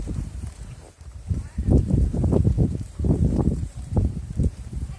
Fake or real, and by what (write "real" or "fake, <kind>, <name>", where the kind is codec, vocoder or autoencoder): fake, vocoder, BigVGAN v2